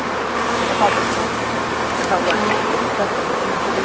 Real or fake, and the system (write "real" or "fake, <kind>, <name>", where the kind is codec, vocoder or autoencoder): real